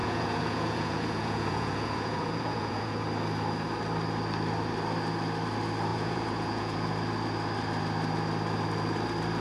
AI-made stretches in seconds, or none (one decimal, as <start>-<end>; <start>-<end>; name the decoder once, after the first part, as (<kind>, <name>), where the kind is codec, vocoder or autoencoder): 0.0-3.0 (vocoder, Vocos); 5.9-6.9